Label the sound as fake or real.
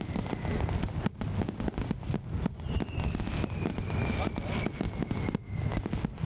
real